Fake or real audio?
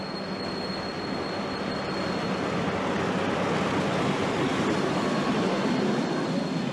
real